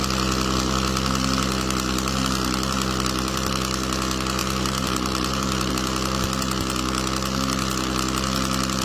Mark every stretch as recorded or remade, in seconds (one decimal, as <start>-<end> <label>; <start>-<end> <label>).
0.0-4.4 recorded; 4.4-5.7 remade; 5.7-8.8 recorded

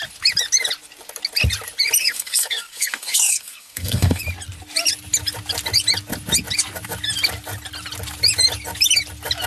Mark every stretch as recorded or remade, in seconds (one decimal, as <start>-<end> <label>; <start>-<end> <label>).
0.0-2.0 recorded; 2.0-4.2 remade; 4.2-9.5 recorded

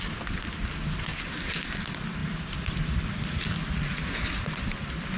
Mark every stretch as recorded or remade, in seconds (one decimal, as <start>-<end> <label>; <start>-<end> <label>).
0.0-5.2 recorded

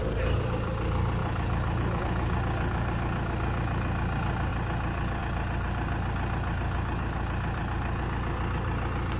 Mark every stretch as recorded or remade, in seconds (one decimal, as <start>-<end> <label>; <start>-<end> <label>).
0.0-9.2 recorded

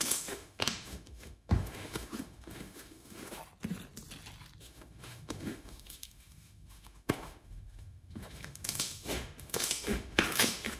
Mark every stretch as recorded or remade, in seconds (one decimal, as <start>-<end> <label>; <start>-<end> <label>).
0.0-3.4 remade; 3.4-4.6 recorded; 4.6-10.8 remade